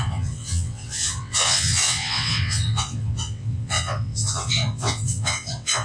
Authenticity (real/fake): fake